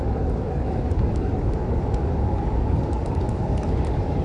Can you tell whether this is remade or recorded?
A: remade